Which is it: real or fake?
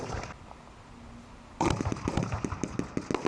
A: real